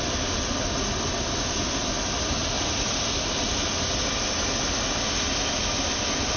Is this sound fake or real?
real